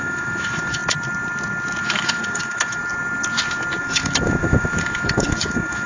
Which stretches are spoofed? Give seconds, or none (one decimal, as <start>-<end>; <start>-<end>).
0.0-0.8; 1.8-2.8; 3.8-5.9